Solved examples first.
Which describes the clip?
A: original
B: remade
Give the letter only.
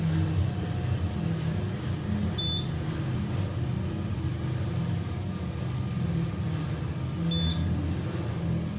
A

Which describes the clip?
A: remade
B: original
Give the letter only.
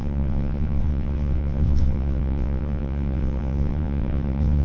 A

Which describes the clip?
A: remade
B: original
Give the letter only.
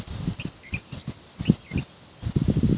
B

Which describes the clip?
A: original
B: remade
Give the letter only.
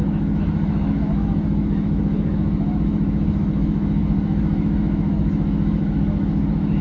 B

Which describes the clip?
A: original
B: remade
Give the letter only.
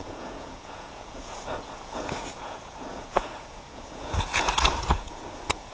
B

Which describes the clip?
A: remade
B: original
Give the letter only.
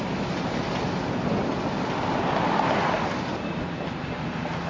B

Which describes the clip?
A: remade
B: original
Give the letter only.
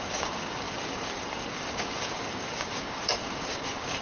A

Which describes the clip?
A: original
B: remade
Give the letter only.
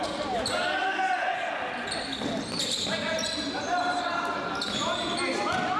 A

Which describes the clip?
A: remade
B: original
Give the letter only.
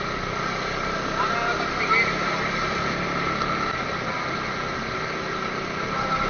B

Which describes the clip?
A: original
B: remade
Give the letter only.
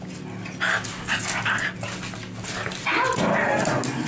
A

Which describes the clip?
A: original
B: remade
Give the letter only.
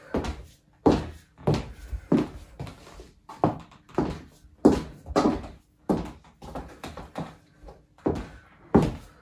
A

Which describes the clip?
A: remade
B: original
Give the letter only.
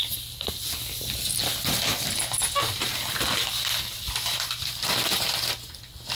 B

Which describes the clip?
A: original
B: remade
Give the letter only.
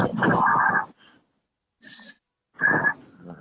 A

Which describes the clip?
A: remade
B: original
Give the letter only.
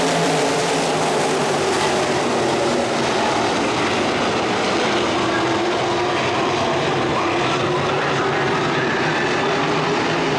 A